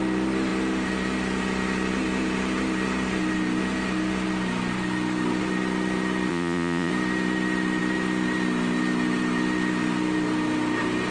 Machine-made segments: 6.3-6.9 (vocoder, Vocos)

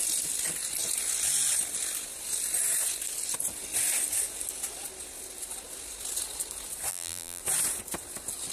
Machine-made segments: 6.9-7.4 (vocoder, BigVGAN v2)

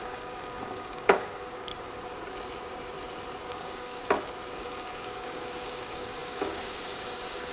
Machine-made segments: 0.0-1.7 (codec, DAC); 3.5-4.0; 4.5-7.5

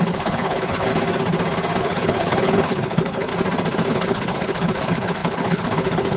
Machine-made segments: 0.0-0.9 (codec, HILCodec); 1.8-3.3; 3.9-6.2